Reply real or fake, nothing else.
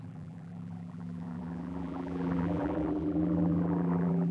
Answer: fake